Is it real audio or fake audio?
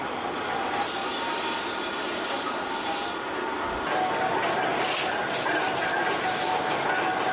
real